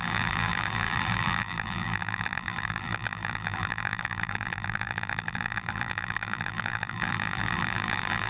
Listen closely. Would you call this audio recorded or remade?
remade